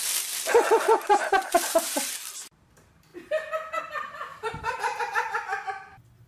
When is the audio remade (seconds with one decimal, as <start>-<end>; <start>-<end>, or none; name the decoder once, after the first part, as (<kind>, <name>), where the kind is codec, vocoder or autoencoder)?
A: 0.9-2.7 (vocoder, BigVGAN v2); 4.3-5.0